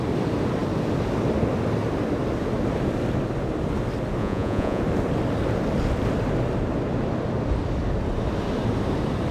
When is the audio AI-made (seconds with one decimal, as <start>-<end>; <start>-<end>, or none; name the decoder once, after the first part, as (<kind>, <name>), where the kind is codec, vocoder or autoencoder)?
4.2-4.8 (vocoder, Vocos)